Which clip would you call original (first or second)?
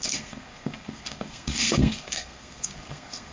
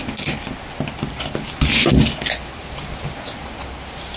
second